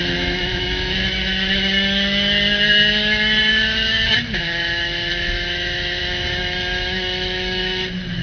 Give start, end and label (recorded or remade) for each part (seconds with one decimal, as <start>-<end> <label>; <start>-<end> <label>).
0.0-8.2 remade